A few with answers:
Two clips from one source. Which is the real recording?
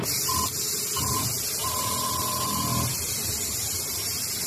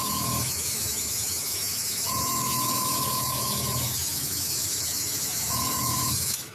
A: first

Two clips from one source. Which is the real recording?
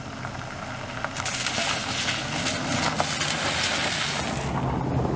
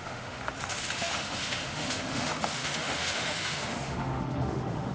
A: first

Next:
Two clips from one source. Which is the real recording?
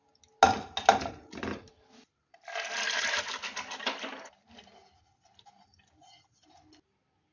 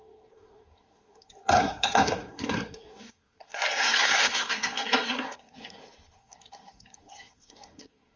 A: first